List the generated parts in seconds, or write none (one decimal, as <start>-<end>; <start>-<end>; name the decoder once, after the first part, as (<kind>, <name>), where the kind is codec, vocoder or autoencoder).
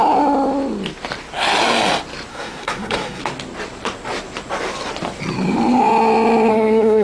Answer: 2.3-3.2 (codec, SNAC); 6.5-7.0